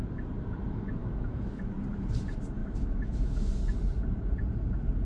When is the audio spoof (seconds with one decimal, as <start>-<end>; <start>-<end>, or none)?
1.0-1.6; 2.6-3.6